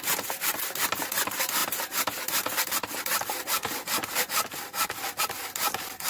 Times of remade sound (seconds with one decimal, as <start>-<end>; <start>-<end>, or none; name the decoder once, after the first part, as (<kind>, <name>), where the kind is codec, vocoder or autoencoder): none